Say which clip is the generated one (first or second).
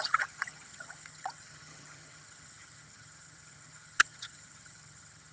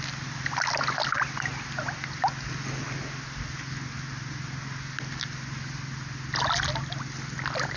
first